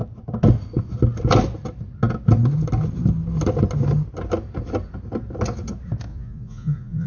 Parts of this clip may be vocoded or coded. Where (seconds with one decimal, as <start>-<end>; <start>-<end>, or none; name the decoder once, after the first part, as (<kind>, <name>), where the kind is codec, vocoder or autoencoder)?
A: 6.1-7.1 (vocoder, Vocos)